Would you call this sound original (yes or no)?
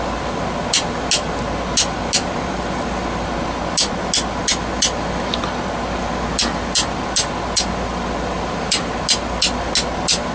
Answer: yes